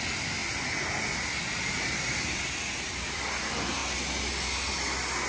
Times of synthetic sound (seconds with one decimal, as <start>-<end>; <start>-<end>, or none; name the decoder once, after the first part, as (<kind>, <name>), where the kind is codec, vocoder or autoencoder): none